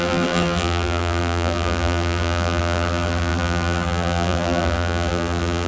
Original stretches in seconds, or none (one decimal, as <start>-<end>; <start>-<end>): none